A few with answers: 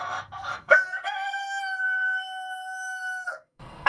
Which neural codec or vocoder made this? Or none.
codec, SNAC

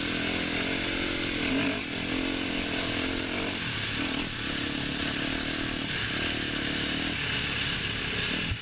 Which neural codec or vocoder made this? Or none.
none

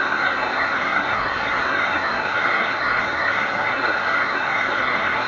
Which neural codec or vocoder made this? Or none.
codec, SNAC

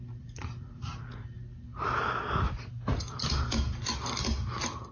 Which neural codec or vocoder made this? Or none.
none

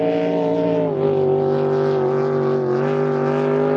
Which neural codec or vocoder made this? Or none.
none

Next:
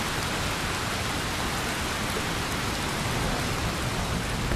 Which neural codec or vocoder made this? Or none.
none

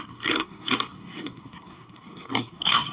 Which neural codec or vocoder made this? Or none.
codec, SNAC